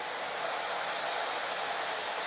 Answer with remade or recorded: recorded